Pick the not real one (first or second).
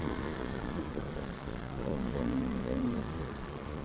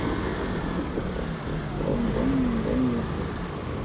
first